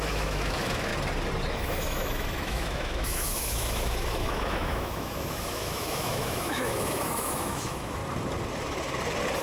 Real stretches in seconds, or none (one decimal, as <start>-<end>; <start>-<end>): 0.9-1.5; 8.0-9.4